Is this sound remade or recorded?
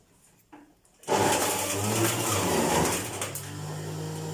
recorded